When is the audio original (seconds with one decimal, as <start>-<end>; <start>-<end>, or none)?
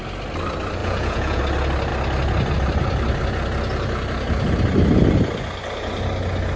0.0-0.8; 1.4-6.6